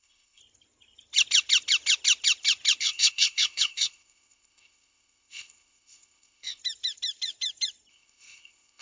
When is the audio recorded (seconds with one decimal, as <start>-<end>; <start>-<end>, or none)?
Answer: 0.4-2.8; 6.6-7.9